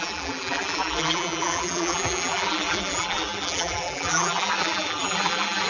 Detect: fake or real fake